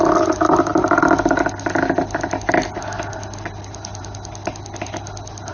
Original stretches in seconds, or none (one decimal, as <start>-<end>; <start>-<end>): 0.0-5.5